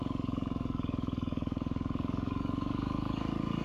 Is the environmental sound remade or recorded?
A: remade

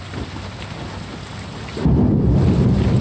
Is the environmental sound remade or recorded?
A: recorded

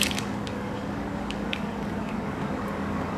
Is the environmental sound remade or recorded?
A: remade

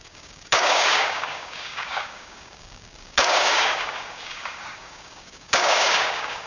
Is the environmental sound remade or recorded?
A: remade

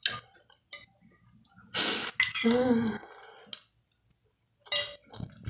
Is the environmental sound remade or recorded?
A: recorded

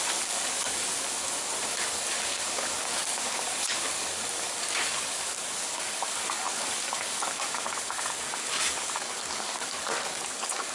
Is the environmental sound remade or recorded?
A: remade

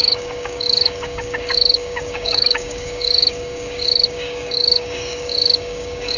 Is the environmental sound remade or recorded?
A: remade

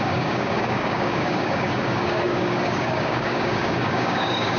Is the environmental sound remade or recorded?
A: remade